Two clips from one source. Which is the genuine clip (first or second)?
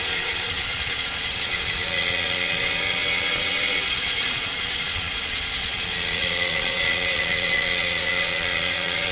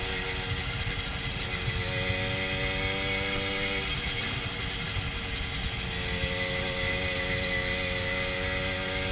second